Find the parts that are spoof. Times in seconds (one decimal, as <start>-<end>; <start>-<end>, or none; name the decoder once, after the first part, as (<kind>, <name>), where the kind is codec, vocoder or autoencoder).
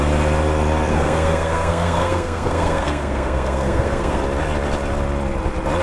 0.9-4.2 (codec, SNAC)